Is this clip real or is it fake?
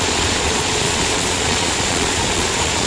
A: fake